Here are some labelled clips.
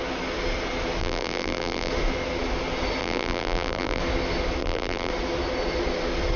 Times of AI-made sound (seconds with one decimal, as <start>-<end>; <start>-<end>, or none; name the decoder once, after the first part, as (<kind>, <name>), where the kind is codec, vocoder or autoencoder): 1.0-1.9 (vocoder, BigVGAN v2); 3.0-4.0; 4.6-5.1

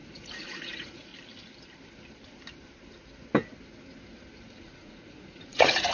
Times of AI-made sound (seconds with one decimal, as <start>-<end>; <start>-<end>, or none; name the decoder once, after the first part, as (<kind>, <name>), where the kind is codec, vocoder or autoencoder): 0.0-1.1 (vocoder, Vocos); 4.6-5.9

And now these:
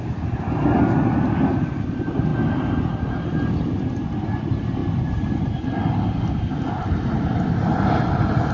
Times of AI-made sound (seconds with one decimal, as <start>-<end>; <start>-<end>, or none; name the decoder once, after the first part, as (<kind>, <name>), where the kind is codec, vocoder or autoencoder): none